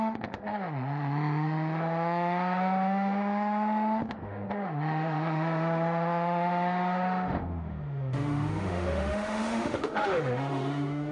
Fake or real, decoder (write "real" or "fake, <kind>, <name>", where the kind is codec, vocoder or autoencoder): fake, autoencoder, DAC-VAE